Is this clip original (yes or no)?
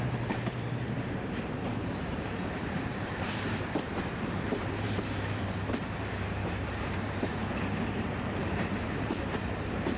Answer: no